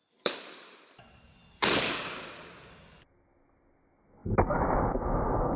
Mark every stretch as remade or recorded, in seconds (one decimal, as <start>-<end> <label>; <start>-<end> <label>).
0.0-1.0 remade; 1.0-5.6 recorded